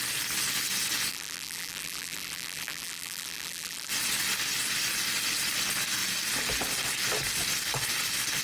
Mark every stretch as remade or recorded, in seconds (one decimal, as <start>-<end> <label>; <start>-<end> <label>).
0.0-1.1 recorded; 1.1-3.9 remade; 3.9-8.4 recorded